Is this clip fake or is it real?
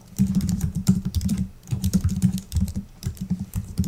fake